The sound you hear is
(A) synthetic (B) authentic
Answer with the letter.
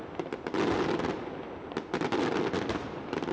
B